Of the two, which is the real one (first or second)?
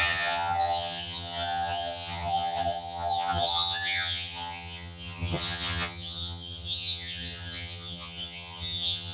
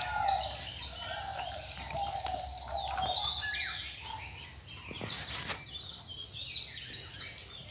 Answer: second